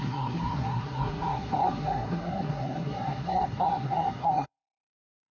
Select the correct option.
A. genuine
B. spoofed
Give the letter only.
B